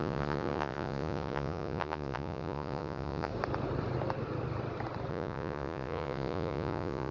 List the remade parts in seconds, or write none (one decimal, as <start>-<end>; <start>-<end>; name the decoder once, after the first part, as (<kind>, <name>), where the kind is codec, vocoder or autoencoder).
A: 0.0-3.3 (vocoder, Vocos); 5.1-7.1